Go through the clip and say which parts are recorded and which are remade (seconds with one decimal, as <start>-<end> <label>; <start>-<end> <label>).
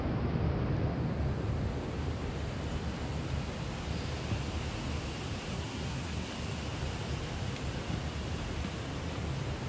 0.0-5.5 recorded; 5.5-6.3 remade; 6.3-9.7 recorded